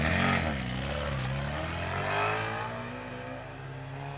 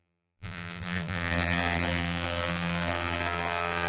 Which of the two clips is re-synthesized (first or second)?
second